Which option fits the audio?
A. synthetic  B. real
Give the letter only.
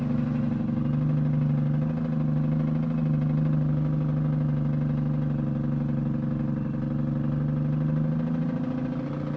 B